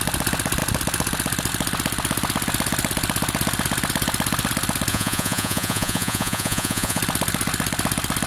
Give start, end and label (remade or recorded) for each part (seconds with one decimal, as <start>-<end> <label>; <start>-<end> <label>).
0.0-4.9 recorded; 4.9-7.0 remade; 7.0-8.3 recorded